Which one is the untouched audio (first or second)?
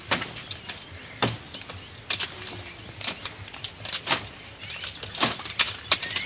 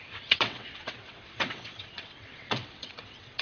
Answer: first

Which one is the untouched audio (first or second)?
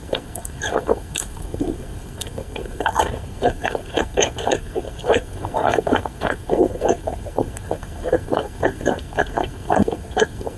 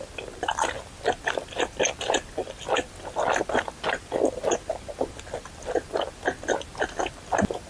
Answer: second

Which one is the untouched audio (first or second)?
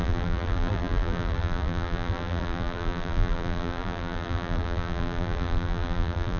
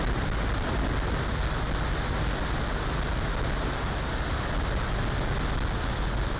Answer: second